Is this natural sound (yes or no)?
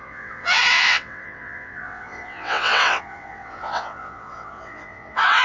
no